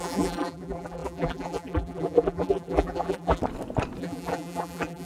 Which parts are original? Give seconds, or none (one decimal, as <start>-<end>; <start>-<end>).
3.4-4.0